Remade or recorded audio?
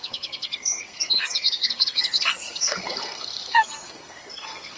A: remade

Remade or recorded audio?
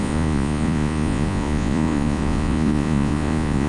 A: remade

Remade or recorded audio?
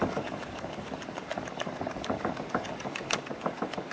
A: remade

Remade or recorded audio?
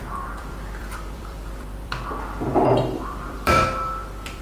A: remade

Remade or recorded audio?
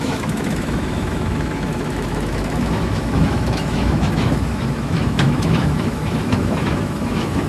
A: remade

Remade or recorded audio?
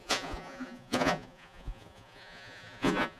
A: remade